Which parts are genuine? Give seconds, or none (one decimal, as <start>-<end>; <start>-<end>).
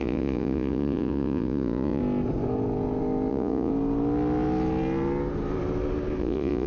2.0-3.3; 3.7-6.2